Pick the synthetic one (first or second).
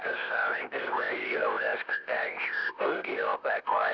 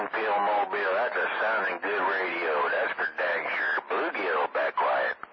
first